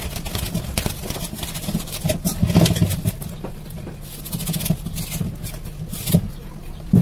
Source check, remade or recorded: recorded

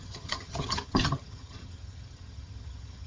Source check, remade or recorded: remade